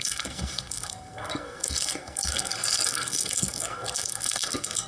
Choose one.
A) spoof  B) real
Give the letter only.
A